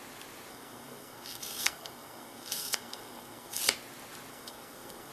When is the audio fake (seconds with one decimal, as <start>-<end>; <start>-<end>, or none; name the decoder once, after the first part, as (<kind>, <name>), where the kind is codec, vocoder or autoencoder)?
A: 0.5-3.6 (codec, SNAC); 4.3-5.1